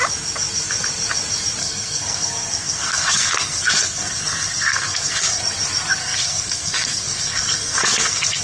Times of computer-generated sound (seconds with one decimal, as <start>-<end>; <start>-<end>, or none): 1.6-5.4; 6.0-8.4